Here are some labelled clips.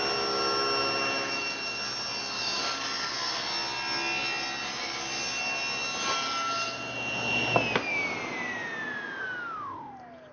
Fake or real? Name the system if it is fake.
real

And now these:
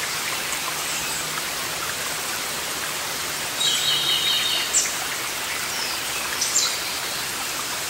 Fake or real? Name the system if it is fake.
fake, vocoder, BigVGAN v2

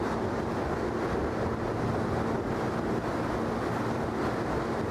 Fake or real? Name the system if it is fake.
real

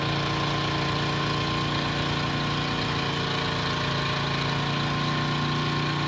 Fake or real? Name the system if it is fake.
real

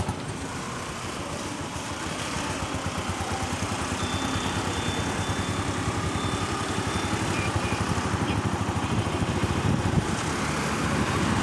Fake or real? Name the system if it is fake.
fake, vocoder, BigVGAN v2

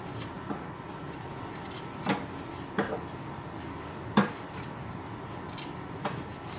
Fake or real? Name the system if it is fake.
fake, vocoder, BigVGAN v2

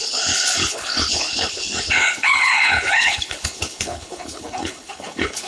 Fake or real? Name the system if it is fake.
fake, codec, HILCodec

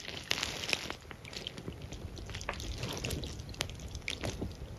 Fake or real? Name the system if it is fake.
real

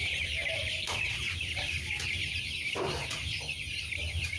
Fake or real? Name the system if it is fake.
fake, vocoder, BigVGAN v2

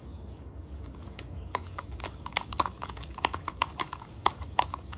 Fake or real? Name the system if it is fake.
fake, codec, DAC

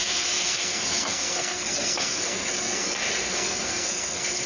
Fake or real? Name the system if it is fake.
fake, codec, SNAC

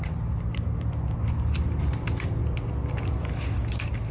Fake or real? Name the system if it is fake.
real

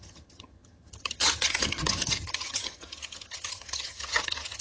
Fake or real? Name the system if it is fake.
fake, vocoder, HiFi-GAN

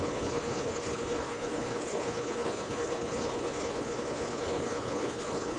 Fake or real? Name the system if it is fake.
fake, codec, HILCodec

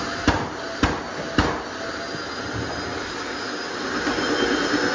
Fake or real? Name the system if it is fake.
real